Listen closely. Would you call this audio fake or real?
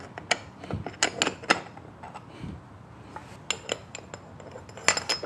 real